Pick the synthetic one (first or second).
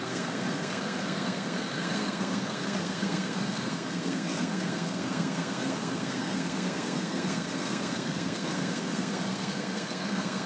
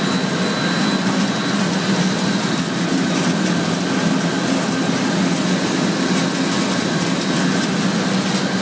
first